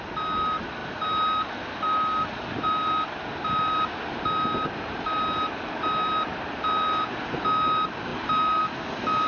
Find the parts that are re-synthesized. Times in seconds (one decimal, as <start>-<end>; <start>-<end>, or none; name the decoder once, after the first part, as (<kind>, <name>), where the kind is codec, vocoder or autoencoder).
none